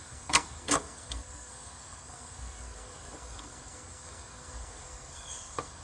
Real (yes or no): no